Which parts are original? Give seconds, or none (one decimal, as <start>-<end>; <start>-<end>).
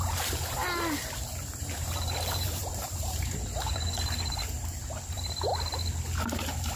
0.6-1.6; 5.5-6.8